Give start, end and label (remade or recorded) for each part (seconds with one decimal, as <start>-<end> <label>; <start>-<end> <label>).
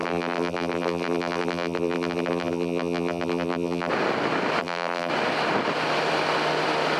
0.0-3.9 remade; 3.9-4.6 recorded; 4.6-5.1 remade; 5.1-7.0 recorded